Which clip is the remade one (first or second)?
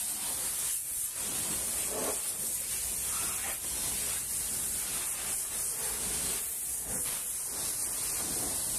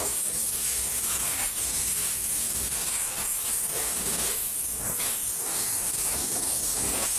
second